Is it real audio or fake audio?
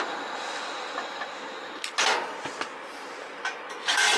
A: real